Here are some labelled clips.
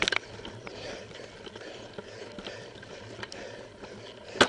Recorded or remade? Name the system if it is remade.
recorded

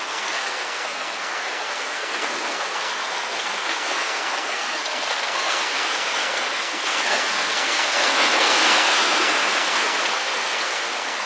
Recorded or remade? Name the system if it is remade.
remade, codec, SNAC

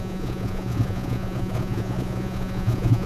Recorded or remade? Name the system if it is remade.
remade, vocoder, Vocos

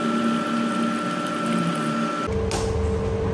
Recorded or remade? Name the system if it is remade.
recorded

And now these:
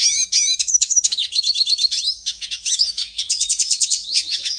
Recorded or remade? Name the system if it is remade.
remade, autoencoder, DAC-VAE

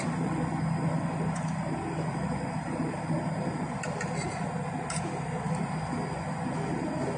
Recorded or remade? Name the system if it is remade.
recorded